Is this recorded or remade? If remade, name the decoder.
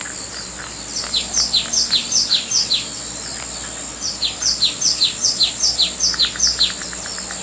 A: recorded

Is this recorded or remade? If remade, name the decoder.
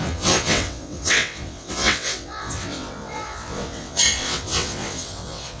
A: remade, vocoder, WaveNeXt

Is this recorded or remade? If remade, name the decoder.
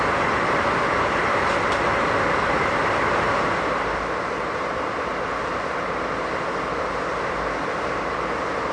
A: recorded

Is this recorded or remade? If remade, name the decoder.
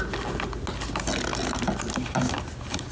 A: recorded